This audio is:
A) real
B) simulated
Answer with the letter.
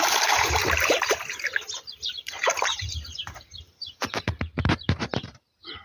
B